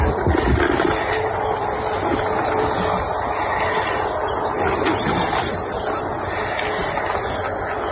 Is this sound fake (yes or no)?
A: no